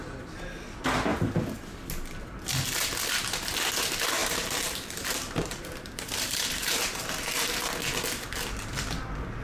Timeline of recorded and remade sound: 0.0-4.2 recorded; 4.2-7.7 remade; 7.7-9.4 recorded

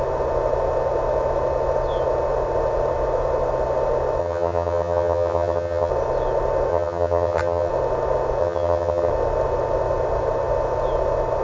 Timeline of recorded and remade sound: 0.0-4.2 recorded; 4.2-5.9 remade; 5.9-6.7 recorded; 6.7-7.7 remade; 7.7-8.4 recorded; 8.4-9.1 remade; 9.1-11.4 recorded

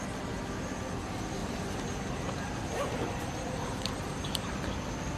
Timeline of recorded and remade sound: 0.0-1.4 recorded; 1.4-4.5 remade; 4.5-5.2 recorded

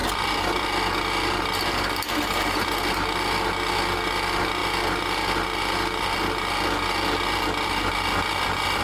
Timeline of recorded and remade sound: 0.0-0.7 remade; 0.7-8.8 recorded

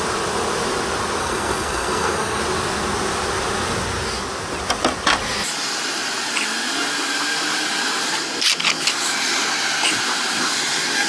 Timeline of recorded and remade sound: 0.0-1.2 recorded; 1.2-2.4 remade; 2.4-11.1 recorded

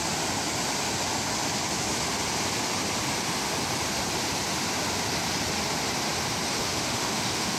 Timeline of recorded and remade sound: 0.0-6.6 recorded; 6.6-7.6 remade